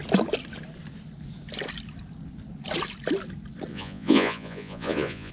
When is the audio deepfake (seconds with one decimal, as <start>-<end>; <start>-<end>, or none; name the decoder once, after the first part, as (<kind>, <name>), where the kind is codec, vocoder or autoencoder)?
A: 3.7-5.3 (vocoder, Vocos)